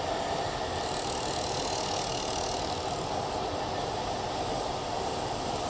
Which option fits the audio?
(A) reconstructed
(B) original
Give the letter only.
B